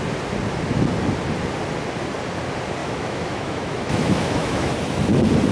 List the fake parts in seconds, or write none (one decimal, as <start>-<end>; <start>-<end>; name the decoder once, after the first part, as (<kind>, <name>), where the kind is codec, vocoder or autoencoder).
2.8-4.7 (autoencoder, DAC-VAE)